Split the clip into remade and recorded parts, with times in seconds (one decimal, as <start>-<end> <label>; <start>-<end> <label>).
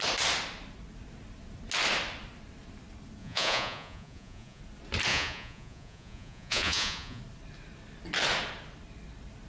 0.0-3.2 recorded; 3.2-4.6 remade; 4.6-5.1 recorded; 5.1-7.2 remade; 7.2-9.5 recorded